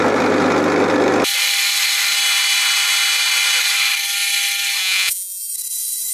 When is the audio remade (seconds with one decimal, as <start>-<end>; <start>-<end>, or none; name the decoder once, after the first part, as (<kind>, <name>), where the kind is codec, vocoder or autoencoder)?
4.8-5.4 (vocoder, Vocos)

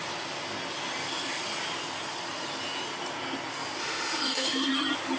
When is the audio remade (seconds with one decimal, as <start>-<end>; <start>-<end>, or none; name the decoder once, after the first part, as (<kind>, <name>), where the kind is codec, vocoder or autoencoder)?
3.8-4.7 (autoencoder, DAC-VAE)

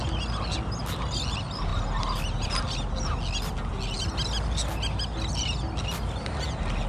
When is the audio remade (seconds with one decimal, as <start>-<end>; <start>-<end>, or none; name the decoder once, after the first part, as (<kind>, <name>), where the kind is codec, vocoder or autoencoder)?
none